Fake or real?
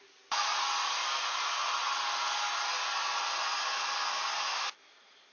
real